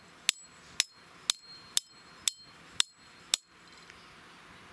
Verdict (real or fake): real